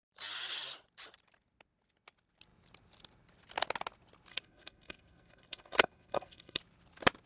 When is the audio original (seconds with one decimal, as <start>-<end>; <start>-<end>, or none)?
0.0-4.3; 6.6-7.3